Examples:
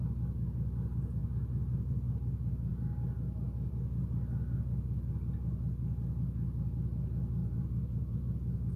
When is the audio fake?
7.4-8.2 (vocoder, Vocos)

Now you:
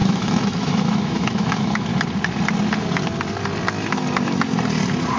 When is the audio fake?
0.0-1.9 (autoencoder, DAC-VAE)